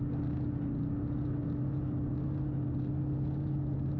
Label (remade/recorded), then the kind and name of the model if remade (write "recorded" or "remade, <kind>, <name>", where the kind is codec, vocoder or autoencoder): recorded